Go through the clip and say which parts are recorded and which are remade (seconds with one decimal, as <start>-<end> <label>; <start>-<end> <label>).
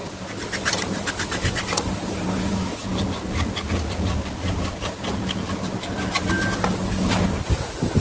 0.0-2.5 recorded; 2.5-2.9 remade; 2.9-8.0 recorded